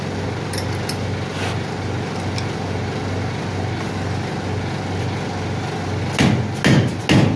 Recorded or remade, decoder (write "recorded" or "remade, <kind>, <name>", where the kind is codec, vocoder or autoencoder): recorded